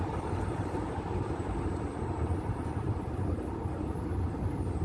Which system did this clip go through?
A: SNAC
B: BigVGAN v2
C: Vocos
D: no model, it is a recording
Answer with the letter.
B